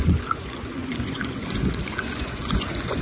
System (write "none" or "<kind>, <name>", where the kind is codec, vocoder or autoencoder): vocoder, Vocos